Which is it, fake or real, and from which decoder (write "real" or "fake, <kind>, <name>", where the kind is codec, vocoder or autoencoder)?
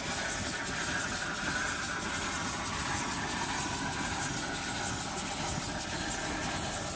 real